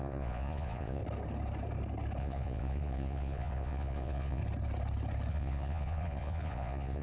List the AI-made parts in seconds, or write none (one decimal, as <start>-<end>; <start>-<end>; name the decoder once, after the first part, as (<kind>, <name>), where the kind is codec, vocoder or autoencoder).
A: 0.0-1.0 (vocoder, Vocos); 2.2-4.4; 5.3-7.0